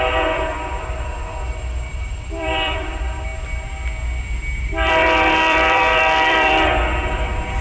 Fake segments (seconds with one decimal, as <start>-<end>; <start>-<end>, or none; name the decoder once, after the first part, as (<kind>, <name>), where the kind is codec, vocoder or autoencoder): 0.0-3.3 (vocoder, BigVGAN v2); 4.6-7.6